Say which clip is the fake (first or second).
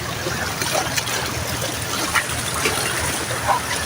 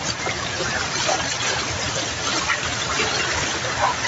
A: second